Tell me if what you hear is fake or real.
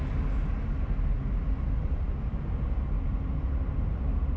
real